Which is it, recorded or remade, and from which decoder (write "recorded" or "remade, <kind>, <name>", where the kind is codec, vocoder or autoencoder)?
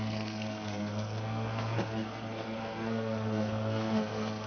remade, codec, SNAC